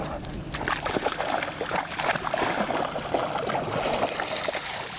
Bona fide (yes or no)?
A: yes